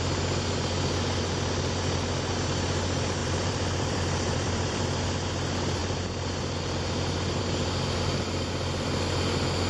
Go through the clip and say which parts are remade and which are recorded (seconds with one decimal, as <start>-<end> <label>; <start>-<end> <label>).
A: 0.0-3.2 recorded; 3.2-5.0 remade; 5.0-9.7 recorded